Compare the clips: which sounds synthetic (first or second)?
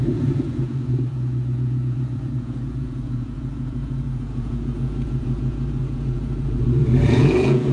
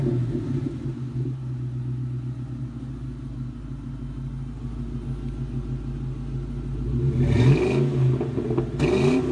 first